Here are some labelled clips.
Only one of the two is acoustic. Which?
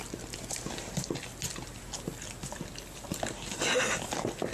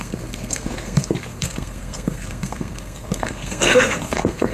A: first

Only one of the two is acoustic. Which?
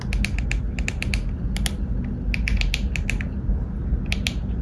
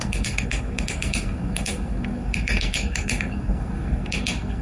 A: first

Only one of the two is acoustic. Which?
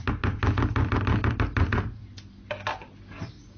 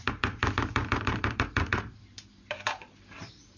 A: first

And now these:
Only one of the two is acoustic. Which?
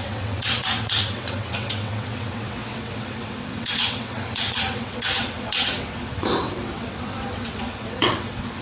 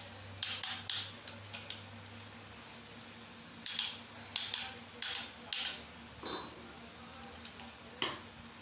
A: second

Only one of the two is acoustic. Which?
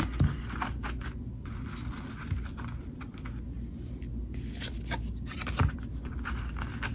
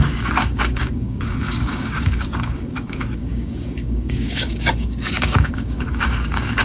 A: first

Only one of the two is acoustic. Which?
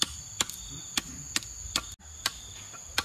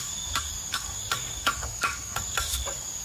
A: first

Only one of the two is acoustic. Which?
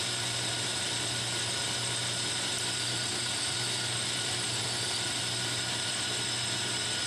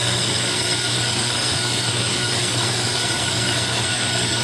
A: first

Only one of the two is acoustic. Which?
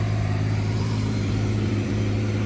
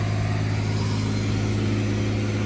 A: second